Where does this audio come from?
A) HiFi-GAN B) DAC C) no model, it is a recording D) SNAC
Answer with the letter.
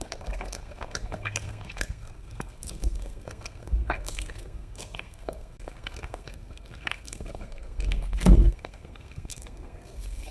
D